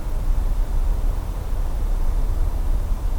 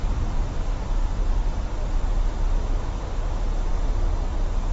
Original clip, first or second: second